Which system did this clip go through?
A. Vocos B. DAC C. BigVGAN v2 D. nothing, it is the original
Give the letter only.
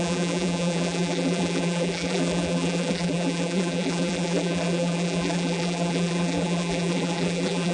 C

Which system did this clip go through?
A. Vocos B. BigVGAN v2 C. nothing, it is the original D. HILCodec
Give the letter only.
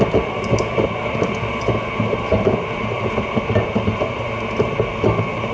B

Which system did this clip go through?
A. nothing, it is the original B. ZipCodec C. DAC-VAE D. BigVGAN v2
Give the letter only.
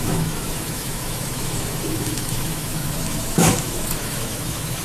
C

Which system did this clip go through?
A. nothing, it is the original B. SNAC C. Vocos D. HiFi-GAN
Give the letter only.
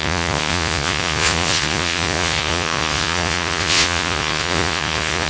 C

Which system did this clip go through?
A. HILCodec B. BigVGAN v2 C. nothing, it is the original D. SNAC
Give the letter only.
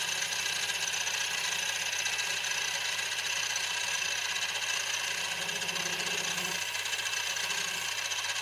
C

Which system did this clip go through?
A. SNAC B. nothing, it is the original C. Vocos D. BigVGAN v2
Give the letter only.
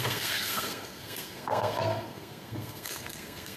A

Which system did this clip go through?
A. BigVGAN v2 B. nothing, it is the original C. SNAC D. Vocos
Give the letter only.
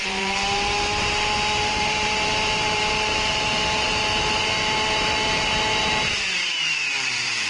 A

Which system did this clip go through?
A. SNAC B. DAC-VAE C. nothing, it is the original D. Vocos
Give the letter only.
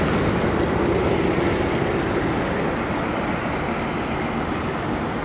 C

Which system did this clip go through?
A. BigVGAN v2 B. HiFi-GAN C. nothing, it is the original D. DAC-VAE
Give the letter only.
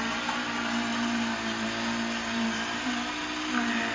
C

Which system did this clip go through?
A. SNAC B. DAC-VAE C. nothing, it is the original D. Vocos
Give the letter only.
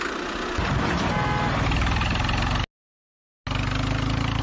C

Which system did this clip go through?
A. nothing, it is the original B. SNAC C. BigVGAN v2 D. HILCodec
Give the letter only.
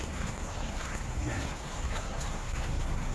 B